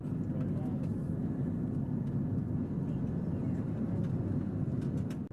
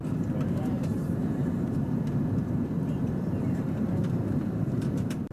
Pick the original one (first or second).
first